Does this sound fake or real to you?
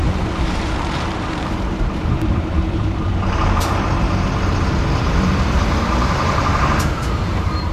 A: fake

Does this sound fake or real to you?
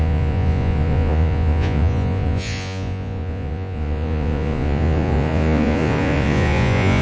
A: fake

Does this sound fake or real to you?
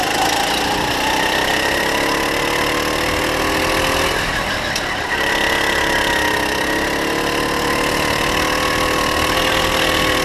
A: real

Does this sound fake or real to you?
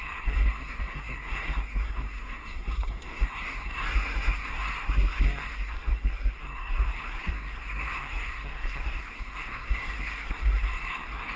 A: fake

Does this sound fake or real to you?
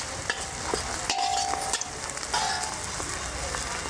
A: real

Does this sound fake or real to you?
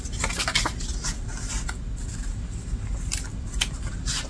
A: real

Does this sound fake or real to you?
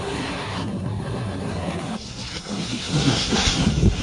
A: fake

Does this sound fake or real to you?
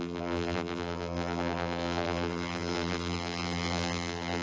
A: fake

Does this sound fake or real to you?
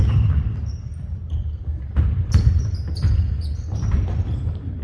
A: real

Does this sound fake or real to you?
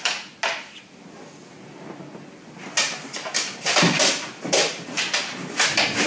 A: real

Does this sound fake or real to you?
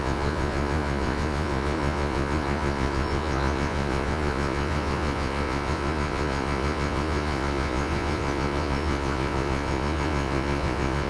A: fake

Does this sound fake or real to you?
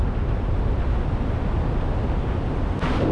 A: real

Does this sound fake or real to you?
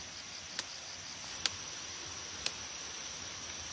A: real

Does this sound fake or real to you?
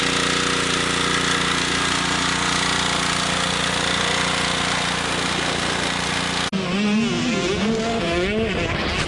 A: real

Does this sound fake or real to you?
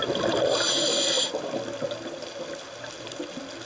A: real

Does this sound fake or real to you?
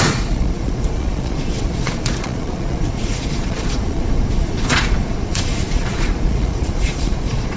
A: fake